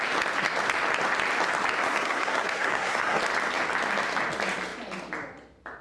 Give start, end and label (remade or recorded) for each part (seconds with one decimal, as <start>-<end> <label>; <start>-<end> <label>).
0.0-1.8 recorded; 1.8-3.2 remade; 3.2-5.8 recorded